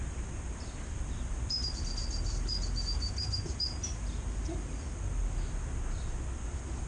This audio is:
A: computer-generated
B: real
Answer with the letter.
B